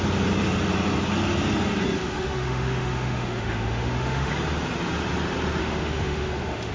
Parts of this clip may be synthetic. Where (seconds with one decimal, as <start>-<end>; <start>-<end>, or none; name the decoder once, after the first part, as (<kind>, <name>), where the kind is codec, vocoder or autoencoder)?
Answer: 2.0-4.3 (autoencoder, DAC-VAE); 5.6-6.7